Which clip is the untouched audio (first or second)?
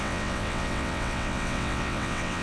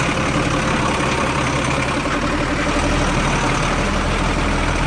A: second